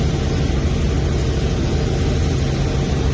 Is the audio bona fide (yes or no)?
yes